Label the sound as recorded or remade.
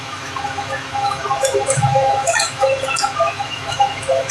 remade